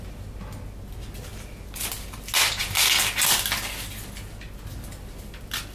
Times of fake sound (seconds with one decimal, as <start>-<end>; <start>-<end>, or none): none